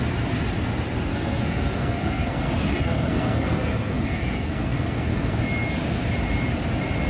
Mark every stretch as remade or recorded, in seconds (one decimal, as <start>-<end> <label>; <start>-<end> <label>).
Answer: 0.0-1.1 recorded; 1.1-5.4 remade; 5.4-7.1 recorded